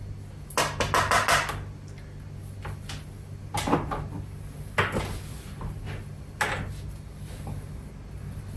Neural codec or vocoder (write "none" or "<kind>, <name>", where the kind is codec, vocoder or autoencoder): none